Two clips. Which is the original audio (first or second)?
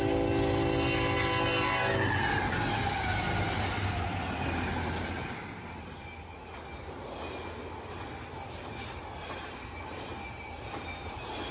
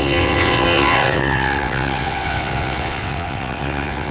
first